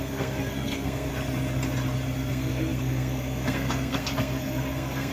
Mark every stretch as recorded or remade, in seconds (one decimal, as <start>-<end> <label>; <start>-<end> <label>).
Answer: 0.0-1.1 remade; 1.1-2.3 recorded; 2.3-5.1 remade